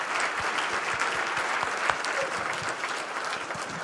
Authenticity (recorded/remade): recorded